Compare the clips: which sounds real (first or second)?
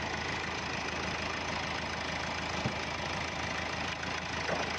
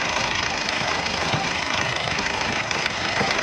first